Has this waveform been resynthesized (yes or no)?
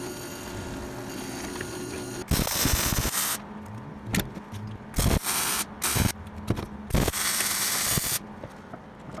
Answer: no